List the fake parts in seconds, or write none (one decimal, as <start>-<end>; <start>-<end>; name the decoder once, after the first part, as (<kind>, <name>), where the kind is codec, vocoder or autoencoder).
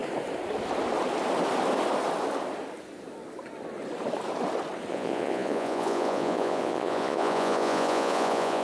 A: 4.9-8.6 (vocoder, Vocos)